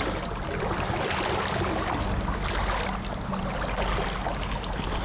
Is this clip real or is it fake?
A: real